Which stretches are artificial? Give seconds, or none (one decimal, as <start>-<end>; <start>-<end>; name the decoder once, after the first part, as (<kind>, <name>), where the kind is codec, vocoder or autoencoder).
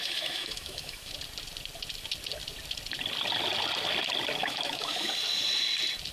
0.0-1.1 (autoencoder, DAC-VAE); 4.4-5.1